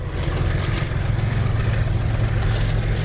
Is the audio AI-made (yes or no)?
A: no